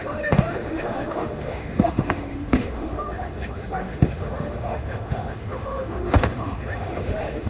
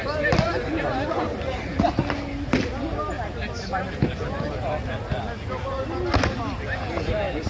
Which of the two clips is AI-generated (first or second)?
first